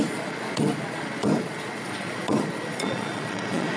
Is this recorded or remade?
remade